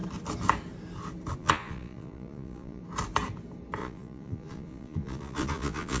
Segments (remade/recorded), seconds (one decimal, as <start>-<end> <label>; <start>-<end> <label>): 0.0-1.4 recorded; 1.4-2.8 remade; 2.8-3.8 recorded; 3.8-6.0 remade